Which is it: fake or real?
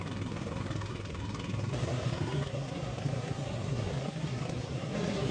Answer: fake